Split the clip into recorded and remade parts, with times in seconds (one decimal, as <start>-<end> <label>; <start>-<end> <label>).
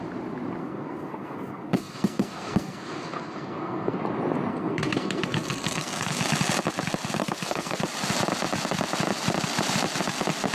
0.0-0.6 recorded; 0.6-4.0 remade; 4.0-4.5 recorded; 4.5-6.2 remade; 6.2-7.2 recorded; 7.2-7.8 remade; 7.8-10.5 recorded